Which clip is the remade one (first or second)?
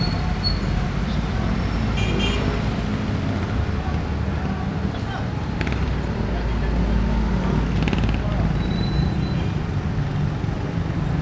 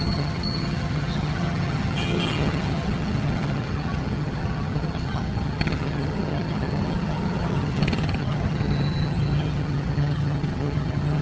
second